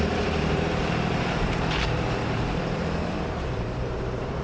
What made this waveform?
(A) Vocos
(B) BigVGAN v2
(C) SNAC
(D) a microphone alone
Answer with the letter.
B